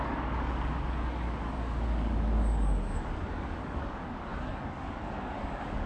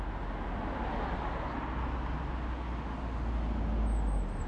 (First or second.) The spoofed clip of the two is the first